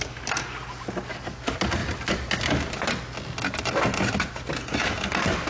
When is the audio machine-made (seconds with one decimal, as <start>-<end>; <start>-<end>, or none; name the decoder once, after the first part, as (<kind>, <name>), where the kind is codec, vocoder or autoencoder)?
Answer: none